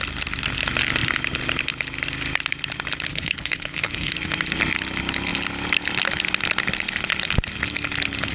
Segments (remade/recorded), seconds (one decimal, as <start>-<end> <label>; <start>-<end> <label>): 0.0-3.1 recorded; 3.1-4.1 remade; 4.1-8.3 recorded